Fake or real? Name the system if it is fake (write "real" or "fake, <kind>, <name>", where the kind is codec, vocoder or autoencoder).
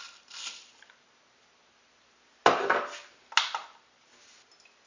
real